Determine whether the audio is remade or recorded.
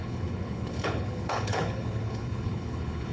remade